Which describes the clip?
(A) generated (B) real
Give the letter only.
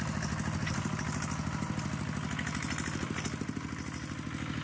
B